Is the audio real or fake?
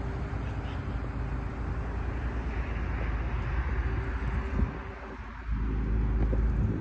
real